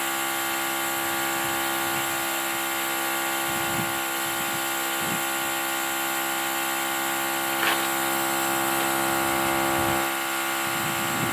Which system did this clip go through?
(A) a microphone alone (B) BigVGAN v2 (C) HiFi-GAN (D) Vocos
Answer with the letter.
A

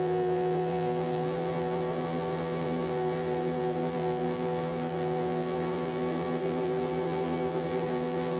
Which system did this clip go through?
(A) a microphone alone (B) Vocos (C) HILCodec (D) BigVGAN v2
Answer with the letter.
D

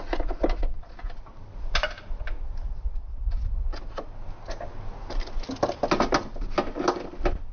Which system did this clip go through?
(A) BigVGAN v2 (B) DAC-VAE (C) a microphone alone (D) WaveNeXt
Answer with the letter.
C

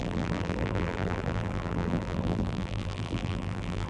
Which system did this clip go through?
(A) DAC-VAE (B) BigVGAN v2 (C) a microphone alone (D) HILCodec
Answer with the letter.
B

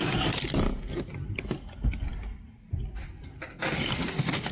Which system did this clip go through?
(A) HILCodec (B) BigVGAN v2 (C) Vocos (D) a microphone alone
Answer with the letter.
D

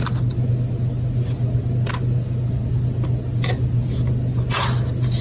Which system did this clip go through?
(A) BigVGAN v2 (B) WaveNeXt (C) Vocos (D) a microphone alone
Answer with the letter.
D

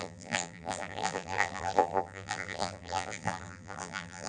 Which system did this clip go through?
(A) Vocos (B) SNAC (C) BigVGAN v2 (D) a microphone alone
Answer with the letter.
C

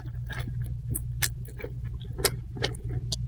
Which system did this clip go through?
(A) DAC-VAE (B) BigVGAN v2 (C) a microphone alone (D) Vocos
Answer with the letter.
C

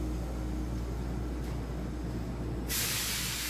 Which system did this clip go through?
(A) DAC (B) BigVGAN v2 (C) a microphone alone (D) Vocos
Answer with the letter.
C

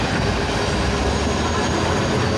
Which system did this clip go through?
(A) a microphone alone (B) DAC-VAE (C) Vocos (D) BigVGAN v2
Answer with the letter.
A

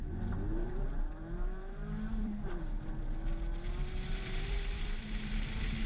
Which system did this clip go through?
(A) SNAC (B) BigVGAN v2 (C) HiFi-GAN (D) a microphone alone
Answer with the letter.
B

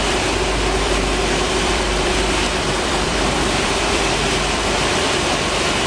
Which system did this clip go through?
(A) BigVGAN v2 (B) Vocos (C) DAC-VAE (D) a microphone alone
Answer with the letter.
A